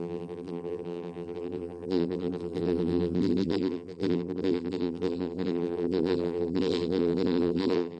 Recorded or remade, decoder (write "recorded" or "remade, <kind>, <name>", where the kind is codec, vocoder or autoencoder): remade, vocoder, BigVGAN v2